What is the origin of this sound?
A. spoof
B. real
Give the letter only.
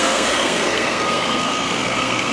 A